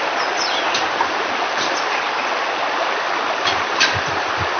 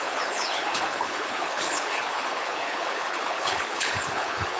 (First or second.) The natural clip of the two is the first